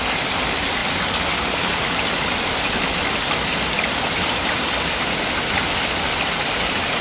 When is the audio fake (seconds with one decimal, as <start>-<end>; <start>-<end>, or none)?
none